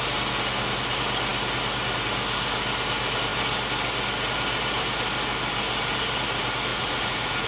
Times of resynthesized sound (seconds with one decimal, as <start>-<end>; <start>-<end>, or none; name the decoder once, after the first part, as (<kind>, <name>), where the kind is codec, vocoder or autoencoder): 6.7-7.5 (vocoder, Vocos)